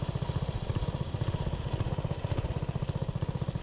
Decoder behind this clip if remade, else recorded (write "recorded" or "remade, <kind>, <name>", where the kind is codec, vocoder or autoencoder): recorded